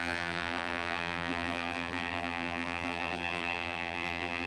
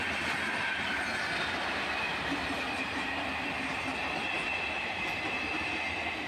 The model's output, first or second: first